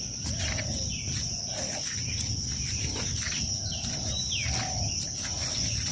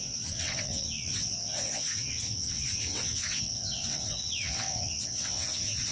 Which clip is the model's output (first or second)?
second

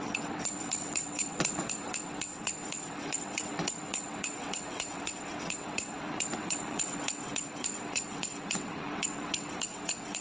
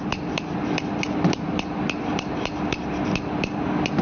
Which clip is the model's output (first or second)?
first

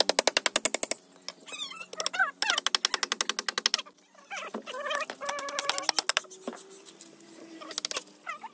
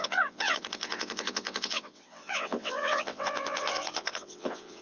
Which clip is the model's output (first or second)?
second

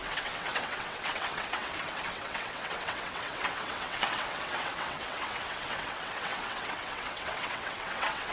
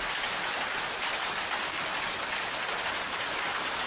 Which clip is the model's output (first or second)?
first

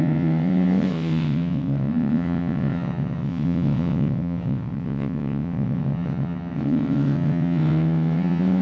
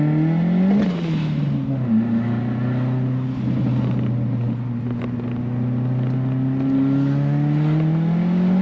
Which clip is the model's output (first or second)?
first